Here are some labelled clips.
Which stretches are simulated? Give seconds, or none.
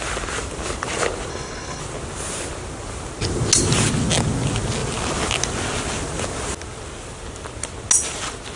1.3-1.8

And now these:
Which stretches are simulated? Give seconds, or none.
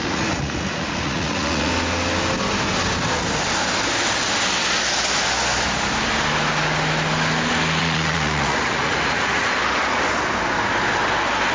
0.0-1.7; 7.8-9.5